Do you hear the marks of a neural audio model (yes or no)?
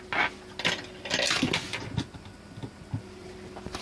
no